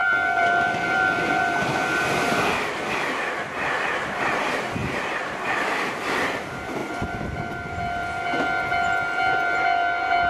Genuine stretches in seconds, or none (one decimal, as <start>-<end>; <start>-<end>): 1.4-4.8; 5.9-10.3